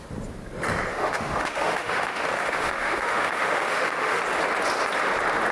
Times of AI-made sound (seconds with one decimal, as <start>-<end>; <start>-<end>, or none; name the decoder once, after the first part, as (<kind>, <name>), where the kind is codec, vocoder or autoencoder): 0.9-4.2 (autoencoder, DAC-VAE)